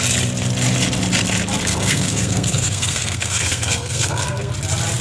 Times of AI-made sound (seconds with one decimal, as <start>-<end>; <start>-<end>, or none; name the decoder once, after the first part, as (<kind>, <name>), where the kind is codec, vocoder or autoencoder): 1.6-4.5 (codec, SNAC)